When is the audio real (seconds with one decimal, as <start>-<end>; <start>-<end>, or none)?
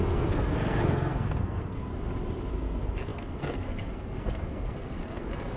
1.8-2.5